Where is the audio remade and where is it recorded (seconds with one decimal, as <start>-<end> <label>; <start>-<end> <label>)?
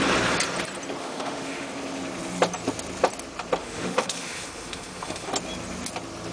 0.0-1.0 recorded; 1.0-1.7 remade; 1.7-3.6 recorded; 3.6-5.3 remade; 5.3-6.3 recorded